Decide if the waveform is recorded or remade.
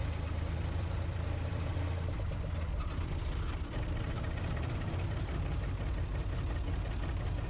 recorded